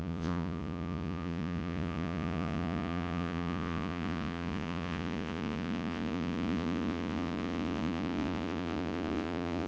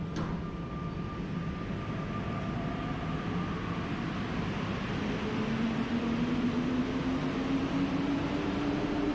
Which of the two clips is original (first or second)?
second